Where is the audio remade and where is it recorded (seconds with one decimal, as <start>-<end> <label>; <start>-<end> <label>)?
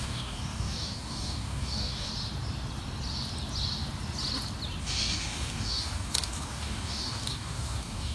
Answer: 0.0-2.1 remade; 2.1-4.8 recorded; 4.8-8.1 remade